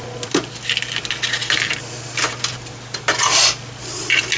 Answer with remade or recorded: recorded